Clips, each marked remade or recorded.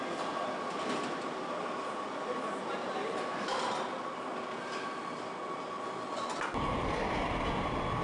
recorded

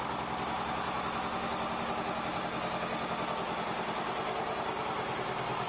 recorded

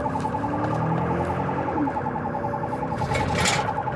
recorded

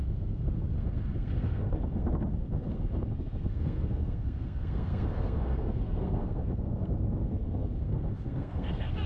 remade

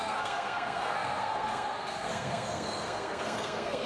remade